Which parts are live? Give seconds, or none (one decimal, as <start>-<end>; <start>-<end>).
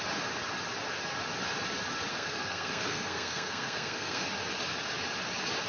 0.0-2.1; 4.2-5.7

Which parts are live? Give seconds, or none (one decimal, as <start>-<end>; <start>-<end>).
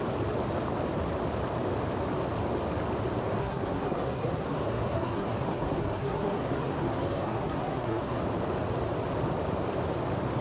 0.0-3.4; 8.2-10.4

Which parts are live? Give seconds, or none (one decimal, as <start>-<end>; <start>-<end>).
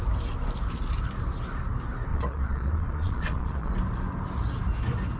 0.0-2.1; 3.7-5.2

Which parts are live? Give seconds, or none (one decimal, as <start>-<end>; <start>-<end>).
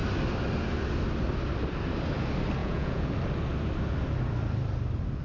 0.0-2.6; 3.1-5.2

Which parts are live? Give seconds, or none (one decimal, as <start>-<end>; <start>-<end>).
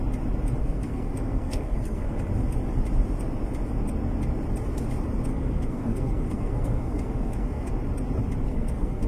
0.0-0.6; 2.3-5.3; 7.7-8.5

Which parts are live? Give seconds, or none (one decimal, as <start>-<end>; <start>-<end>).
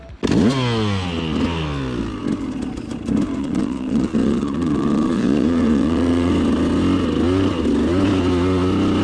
0.0-3.4; 6.3-9.0